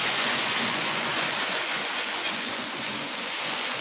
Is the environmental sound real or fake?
fake